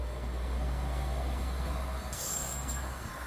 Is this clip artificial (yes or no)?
yes